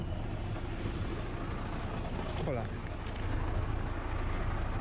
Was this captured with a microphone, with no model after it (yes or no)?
yes